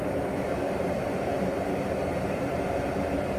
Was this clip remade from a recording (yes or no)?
yes